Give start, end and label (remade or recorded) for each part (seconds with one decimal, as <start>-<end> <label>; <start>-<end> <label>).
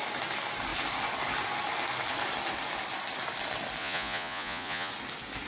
0.0-3.8 recorded; 3.8-4.9 remade; 4.9-5.5 recorded